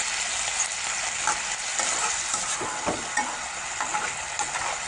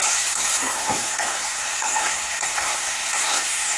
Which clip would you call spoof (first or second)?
second